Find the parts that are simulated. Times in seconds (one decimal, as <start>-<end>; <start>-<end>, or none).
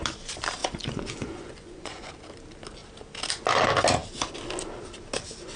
0.6-2.1